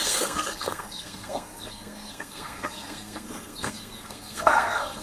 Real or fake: fake